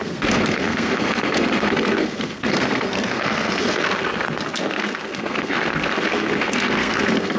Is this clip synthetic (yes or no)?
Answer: yes